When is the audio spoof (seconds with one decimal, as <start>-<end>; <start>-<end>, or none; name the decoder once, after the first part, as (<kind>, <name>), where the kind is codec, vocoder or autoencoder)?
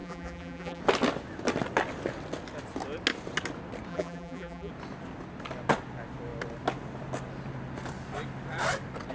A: 0.0-0.8 (vocoder, BigVGAN v2); 3.9-4.7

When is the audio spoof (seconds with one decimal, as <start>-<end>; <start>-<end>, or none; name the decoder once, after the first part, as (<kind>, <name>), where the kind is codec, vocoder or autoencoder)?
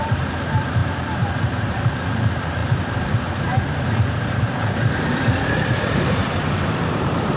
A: 0.0-7.4 (vocoder, BigVGAN v2)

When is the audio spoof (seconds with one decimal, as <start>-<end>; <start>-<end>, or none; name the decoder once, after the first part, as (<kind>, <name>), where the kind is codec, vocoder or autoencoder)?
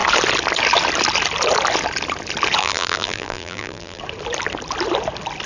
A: 2.6-4.0 (vocoder, BigVGAN v2)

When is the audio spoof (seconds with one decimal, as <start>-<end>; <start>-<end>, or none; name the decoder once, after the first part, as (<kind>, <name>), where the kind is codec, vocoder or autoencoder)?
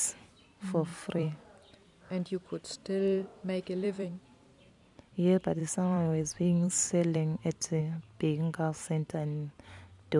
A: 0.9-4.7 (vocoder, BigVGAN v2); 5.6-7.8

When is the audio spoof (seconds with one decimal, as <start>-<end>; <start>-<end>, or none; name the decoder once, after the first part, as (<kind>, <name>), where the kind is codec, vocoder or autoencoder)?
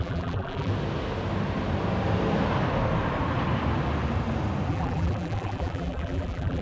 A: 0.0-0.7 (vocoder, BigVGAN v2); 4.7-6.6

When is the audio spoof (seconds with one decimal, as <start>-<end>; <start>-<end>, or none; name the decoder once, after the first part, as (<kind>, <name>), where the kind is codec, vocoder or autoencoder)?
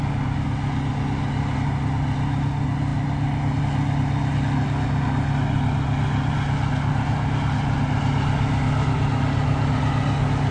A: none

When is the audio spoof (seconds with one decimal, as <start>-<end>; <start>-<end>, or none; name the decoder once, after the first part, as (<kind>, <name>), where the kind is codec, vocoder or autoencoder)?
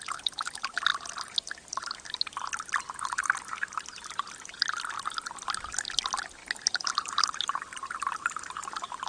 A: 6.4-8.1 (vocoder, BigVGAN v2)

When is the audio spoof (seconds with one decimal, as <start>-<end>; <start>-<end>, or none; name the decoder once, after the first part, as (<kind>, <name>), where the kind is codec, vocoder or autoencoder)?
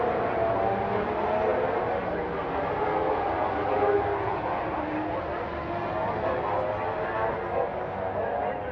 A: none